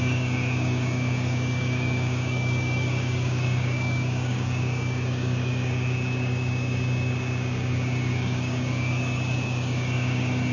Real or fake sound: fake